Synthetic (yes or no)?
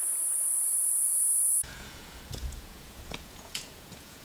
yes